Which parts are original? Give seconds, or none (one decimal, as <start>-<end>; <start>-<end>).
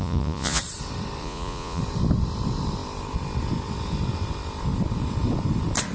0.6-1.2; 1.8-5.9